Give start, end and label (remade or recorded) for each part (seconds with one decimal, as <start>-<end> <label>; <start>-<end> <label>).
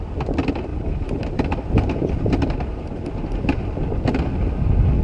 0.0-0.7 recorded; 0.7-3.7 remade; 3.7-5.0 recorded